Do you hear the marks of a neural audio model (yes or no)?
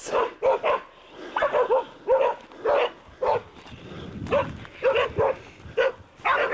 no